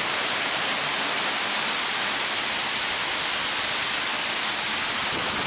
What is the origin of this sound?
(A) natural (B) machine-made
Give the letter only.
A